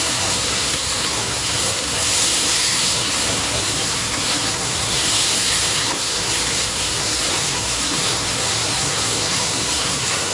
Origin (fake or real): fake